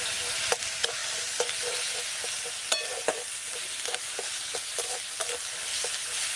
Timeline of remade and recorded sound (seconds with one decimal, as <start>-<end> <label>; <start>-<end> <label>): 0.0-6.4 recorded